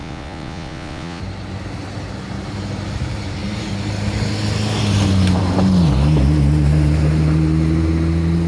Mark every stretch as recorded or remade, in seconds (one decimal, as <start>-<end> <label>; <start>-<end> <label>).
0.0-1.2 remade; 1.2-8.5 recorded